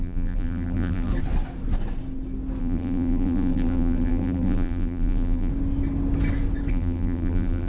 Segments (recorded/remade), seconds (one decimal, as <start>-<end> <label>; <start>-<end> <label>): 0.0-1.1 remade; 1.1-2.6 recorded; 2.6-5.5 remade; 5.5-6.7 recorded; 6.7-7.7 remade